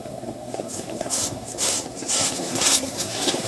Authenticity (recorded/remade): remade